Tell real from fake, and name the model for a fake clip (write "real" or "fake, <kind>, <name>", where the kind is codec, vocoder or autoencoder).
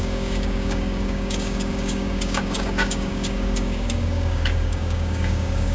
fake, codec, DAC